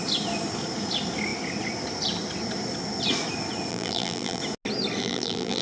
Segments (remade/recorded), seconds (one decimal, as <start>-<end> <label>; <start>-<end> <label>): 0.0-3.7 recorded; 3.7-4.4 remade; 4.4-5.0 recorded; 5.0-5.6 remade